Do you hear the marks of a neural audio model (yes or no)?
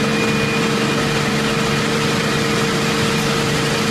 no